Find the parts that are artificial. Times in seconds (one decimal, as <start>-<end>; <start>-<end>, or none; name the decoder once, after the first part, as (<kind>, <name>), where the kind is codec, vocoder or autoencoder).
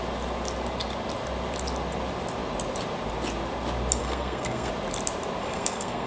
4.0-4.7 (codec, SNAC); 5.4-6.1